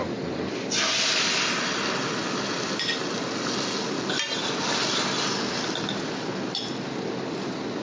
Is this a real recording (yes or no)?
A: yes